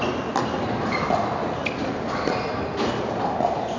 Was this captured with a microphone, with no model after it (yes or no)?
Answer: yes